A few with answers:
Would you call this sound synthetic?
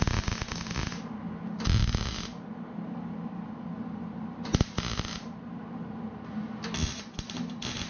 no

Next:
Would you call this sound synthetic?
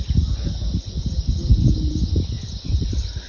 no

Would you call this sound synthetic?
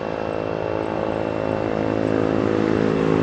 no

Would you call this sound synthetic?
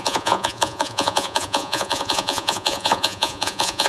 yes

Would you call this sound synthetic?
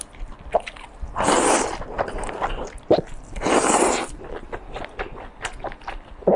no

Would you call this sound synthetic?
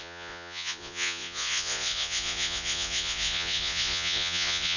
yes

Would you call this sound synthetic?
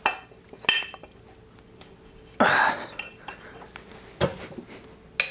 no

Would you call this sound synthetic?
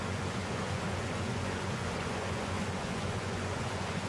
yes